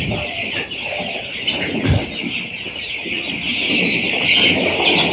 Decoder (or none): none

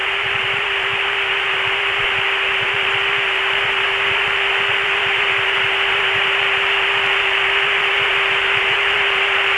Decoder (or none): vocoder, BigVGAN v2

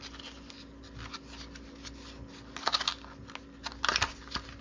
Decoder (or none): none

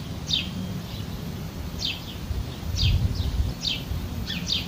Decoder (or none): none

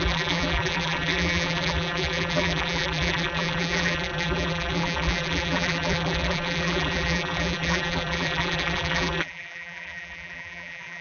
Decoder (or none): vocoder, BigVGAN v2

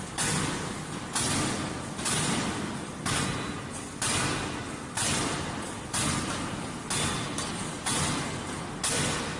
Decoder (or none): none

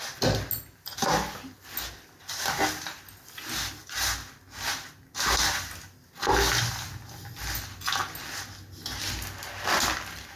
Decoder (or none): none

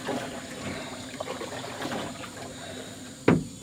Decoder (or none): none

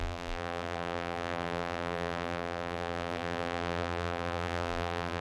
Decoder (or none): vocoder, BigVGAN v2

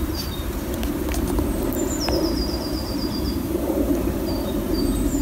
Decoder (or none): vocoder, BigVGAN v2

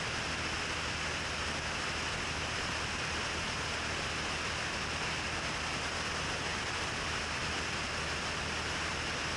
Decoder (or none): none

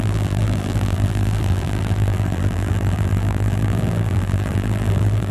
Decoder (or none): vocoder, BigVGAN v2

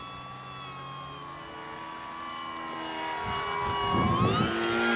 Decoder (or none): none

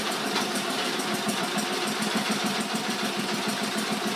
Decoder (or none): vocoder, BigVGAN v2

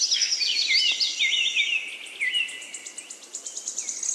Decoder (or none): none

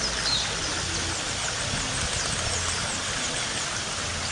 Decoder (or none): none